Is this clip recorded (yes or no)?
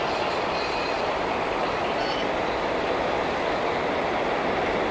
yes